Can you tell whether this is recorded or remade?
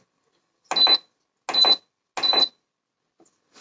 recorded